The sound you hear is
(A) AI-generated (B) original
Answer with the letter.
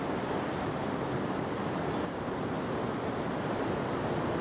B